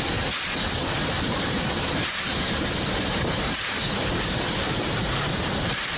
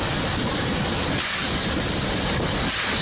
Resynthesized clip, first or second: first